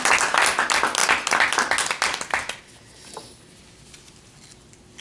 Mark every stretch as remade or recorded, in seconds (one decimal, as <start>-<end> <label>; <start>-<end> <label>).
0.0-5.0 recorded